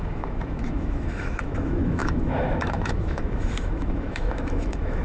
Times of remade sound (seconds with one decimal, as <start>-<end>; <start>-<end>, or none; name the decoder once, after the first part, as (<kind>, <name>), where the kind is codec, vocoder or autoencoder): 0.0-5.0 (autoencoder, DAC-VAE)